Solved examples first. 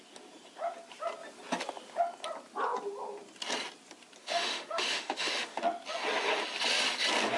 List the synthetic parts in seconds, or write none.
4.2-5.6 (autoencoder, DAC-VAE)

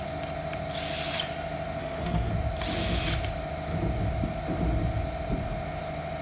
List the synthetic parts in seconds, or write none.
1.8-2.3 (autoencoder, DAC-VAE)

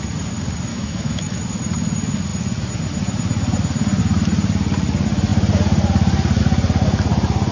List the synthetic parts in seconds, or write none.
0.7-1.4 (autoencoder, DAC-VAE)

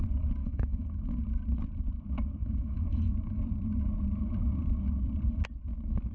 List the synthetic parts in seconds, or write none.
0.4-1.0 (autoencoder, DAC-VAE); 2.4-3.4

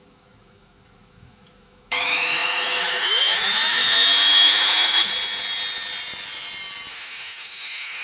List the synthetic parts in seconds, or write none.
0.0-5.1 (autoencoder, DAC-VAE); 6.9-8.0

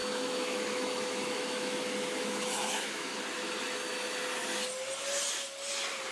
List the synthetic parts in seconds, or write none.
0.0-3.1 (autoencoder, DAC-VAE)